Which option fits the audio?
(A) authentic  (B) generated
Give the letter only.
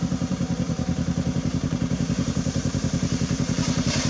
B